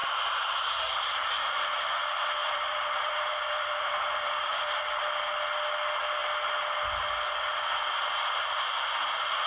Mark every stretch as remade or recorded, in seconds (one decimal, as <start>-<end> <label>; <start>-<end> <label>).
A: 0.0-1.5 remade; 1.5-2.4 recorded; 2.4-4.8 remade; 4.8-9.5 recorded